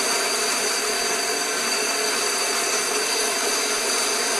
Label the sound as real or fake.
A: real